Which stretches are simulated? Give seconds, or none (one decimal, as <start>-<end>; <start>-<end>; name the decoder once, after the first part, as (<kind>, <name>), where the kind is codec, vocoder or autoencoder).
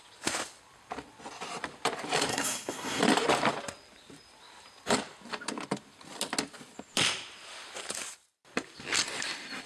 2.3-3.0 (codec, SNAC)